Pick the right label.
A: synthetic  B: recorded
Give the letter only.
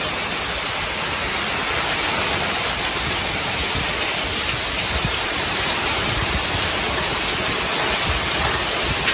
B